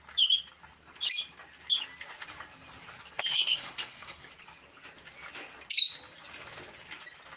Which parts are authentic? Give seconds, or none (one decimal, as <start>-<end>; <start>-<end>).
0.0-3.3; 4.3-7.4